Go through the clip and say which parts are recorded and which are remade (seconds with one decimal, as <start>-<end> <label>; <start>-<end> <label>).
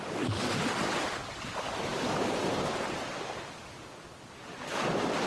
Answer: 0.0-5.3 recorded